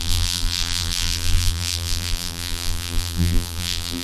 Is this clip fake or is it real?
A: fake